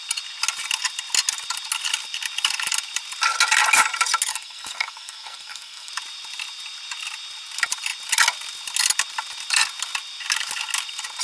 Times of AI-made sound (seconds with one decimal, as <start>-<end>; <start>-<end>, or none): 4.3-5.9